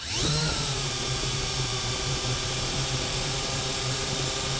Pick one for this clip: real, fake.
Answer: fake